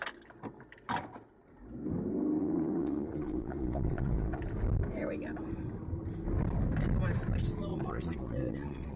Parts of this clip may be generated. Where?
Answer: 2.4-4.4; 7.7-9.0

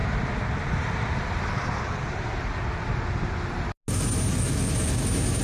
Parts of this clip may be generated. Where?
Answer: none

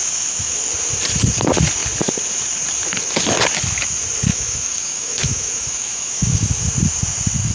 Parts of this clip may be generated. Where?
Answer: 0.0-0.6; 4.3-6.6

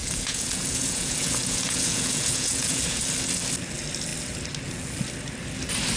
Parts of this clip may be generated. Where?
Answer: 0.0-3.0

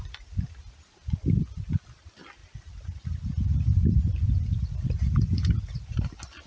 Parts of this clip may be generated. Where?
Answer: none

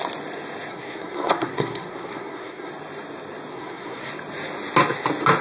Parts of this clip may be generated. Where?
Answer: 0.7-2.7; 3.5-4.1

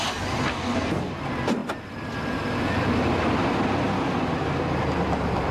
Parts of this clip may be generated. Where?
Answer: 0.5-1.1

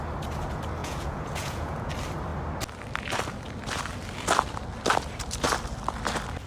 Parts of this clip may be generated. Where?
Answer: 0.8-1.9